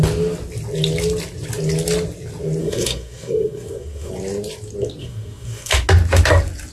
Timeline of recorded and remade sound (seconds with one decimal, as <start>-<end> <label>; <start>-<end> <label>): 0.0-2.6 recorded; 2.6-4.1 remade; 4.1-5.0 recorded; 5.0-5.7 remade; 5.7-6.7 recorded